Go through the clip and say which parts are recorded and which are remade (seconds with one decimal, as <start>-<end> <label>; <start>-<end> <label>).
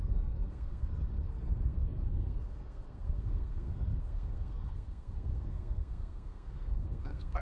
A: 0.0-7.4 remade